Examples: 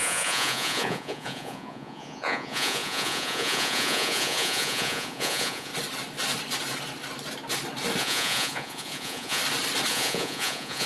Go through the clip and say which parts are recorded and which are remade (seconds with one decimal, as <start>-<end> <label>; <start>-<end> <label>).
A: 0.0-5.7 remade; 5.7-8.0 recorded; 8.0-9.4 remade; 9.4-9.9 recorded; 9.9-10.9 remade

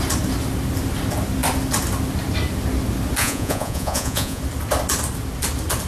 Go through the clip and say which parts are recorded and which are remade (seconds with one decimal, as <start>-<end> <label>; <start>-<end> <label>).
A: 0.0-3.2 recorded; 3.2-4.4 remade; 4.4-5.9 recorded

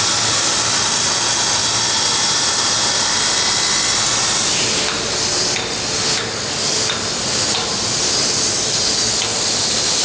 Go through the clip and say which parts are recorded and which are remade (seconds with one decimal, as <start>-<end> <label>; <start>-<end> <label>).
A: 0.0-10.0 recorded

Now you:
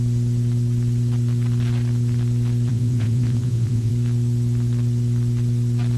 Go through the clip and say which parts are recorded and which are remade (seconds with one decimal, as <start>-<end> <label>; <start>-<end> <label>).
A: 0.0-2.7 recorded; 2.7-3.9 remade; 3.9-6.0 recorded